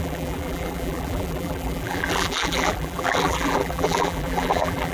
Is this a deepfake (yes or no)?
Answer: yes